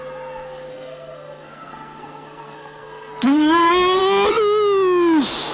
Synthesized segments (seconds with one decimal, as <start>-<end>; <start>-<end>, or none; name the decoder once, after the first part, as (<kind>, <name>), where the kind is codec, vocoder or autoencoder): 0.7-4.0 (codec, SNAC)